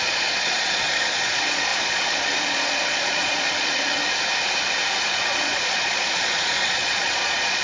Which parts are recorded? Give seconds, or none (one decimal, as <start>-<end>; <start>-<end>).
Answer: 4.0-5.0